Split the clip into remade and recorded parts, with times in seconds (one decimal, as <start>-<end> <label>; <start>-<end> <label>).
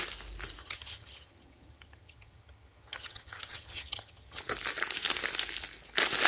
0.0-0.6 recorded; 0.6-4.4 remade; 4.4-6.3 recorded